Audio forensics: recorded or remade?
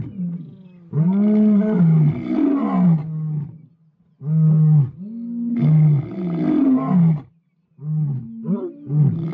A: recorded